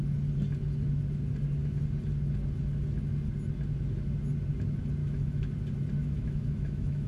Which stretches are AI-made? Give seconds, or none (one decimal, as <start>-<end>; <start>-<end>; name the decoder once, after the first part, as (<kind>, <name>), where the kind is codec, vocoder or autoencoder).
5.0-5.5 (autoencoder, DAC-VAE); 6.0-7.1